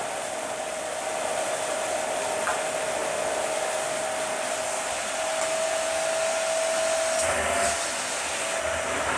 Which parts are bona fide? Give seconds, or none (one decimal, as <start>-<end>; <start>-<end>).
0.0-9.2

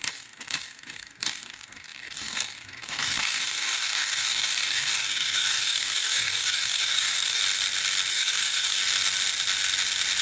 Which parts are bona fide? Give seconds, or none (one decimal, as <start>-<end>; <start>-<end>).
7.4-8.1; 8.8-10.2